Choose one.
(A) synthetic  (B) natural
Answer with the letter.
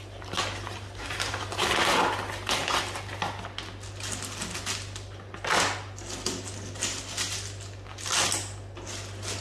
B